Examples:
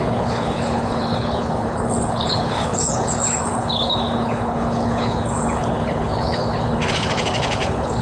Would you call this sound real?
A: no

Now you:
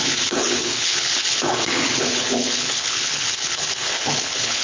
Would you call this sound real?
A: no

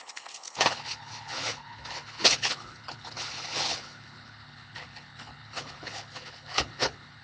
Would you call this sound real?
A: no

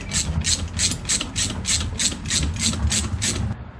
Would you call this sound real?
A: yes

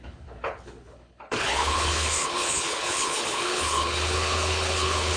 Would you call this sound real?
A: no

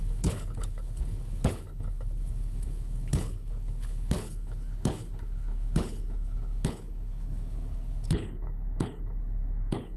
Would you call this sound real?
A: no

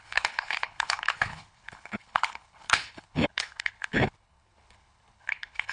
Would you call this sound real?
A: no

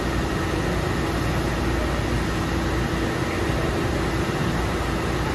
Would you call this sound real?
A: yes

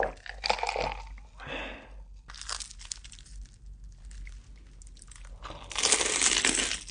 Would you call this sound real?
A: yes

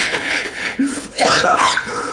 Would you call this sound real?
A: no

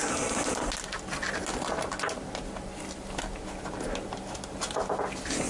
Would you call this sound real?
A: yes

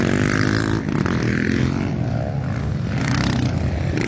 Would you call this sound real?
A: yes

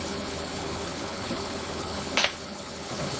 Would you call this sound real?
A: no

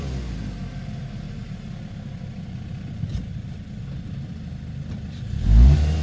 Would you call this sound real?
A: yes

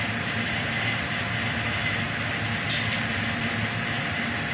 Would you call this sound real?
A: yes